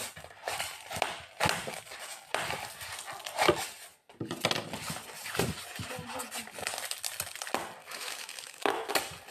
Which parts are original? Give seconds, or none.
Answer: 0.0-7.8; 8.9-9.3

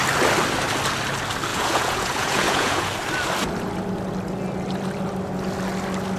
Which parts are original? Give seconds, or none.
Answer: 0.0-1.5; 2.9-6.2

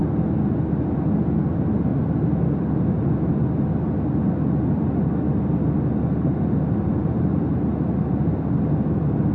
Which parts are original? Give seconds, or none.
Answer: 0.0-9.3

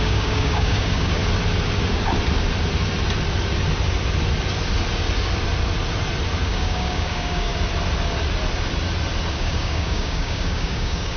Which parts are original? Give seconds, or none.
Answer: 1.2-6.4; 7.5-9.3

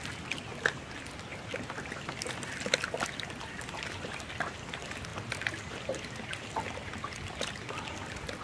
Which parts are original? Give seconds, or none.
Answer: 0.0-8.4

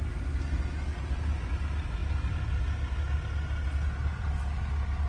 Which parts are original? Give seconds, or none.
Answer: 0.0-5.1

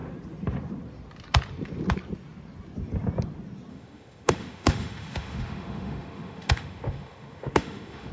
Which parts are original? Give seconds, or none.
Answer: 0.0-3.7

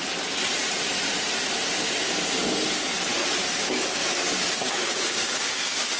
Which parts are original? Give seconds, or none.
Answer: 0.0-3.6; 4.0-4.5